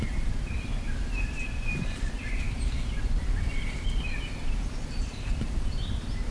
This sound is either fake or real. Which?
fake